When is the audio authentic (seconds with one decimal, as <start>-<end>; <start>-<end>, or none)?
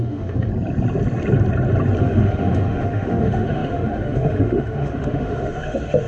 0.5-2.0